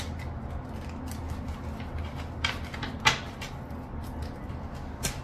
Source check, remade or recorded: recorded